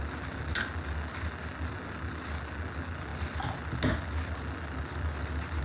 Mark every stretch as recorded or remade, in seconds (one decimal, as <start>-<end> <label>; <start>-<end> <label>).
0.0-5.6 recorded